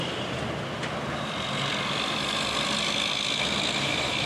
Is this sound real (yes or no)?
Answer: no